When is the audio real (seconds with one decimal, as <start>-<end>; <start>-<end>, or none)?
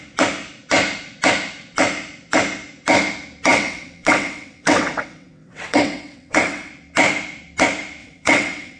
0.0-3.5; 6.7-8.0